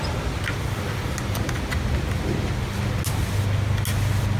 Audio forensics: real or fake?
real